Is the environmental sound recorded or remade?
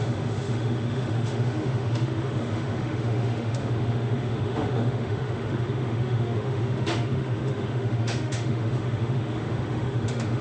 remade